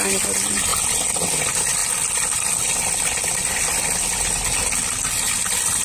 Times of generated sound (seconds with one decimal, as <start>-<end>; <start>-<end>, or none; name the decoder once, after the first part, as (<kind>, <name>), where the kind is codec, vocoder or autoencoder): none